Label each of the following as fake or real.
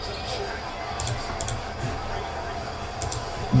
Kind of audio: real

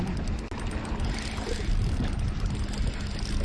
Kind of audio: real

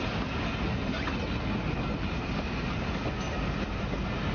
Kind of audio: real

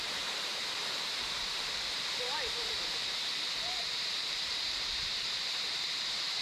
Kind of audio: fake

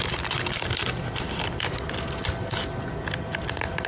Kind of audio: real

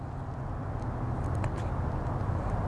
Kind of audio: real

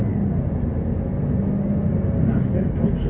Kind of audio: real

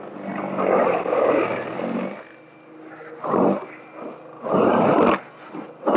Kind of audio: real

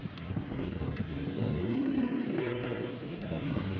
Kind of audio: fake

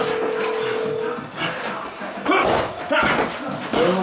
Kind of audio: real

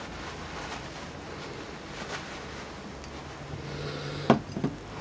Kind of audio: real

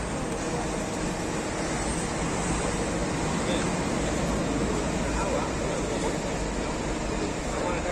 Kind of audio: real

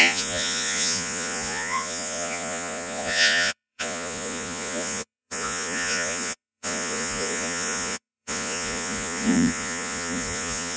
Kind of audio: fake